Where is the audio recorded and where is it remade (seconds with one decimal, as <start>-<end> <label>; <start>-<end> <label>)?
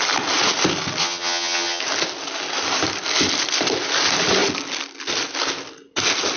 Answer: 0.0-1.0 recorded; 1.0-1.8 remade; 1.8-6.4 recorded